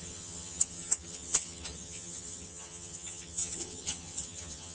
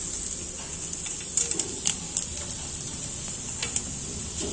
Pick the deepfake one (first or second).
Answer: first